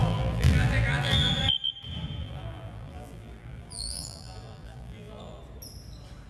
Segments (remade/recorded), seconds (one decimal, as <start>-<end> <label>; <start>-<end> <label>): 0.0-1.3 remade; 1.3-2.2 recorded; 2.2-5.4 remade; 5.4-6.3 recorded

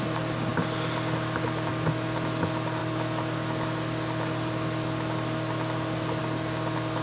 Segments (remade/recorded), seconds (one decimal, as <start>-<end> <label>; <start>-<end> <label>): 0.0-7.0 recorded

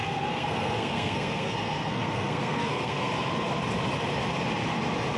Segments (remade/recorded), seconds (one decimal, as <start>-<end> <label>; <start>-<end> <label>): 0.0-3.1 remade; 3.1-5.2 recorded